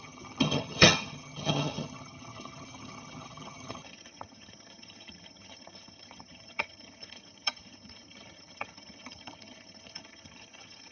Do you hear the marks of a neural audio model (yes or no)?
yes